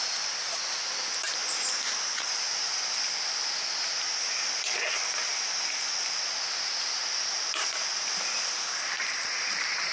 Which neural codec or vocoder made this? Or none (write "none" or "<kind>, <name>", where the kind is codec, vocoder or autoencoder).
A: none